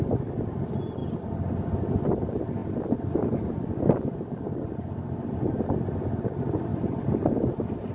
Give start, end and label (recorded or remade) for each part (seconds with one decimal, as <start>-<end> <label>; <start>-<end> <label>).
0.0-7.9 recorded